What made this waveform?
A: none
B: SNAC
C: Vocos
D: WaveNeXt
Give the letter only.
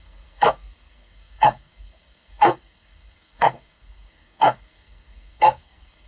B